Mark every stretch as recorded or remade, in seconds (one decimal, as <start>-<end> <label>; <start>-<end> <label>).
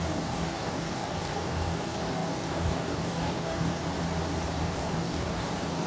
0.0-3.8 remade; 3.8-4.6 recorded; 4.6-5.9 remade